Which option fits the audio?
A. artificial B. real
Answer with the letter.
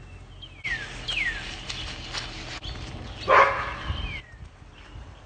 B